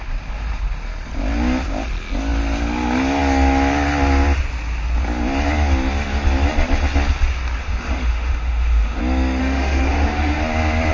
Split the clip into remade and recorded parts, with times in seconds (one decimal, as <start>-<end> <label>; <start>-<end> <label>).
0.0-7.6 recorded; 7.6-9.0 remade; 9.0-9.4 recorded; 9.4-10.4 remade; 10.4-10.9 recorded